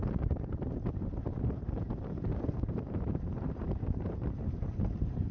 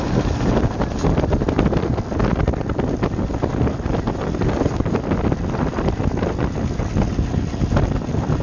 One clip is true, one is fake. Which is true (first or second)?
second